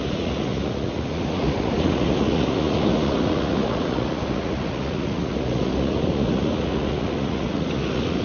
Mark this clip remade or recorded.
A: remade